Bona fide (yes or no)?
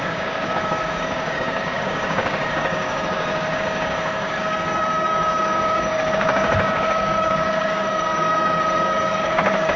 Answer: no